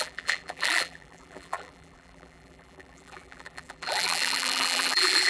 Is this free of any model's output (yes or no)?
no